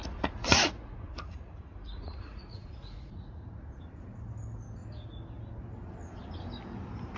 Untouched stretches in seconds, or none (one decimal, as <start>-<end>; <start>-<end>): 3.8-7.2